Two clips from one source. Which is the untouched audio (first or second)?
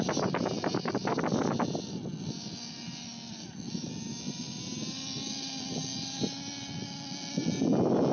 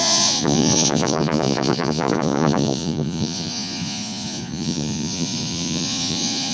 first